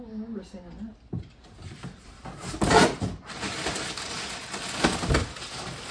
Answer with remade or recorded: recorded